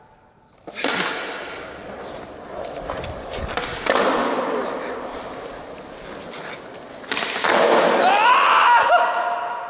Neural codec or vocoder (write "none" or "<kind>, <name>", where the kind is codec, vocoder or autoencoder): none